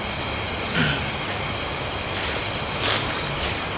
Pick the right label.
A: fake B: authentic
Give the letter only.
B